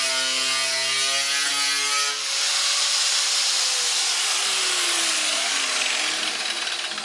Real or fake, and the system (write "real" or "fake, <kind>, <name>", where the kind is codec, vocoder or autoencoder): real